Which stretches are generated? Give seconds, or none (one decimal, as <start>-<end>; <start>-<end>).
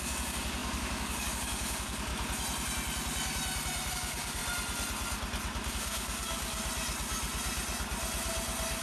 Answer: 0.0-2.1; 3.9-4.4; 5.7-6.6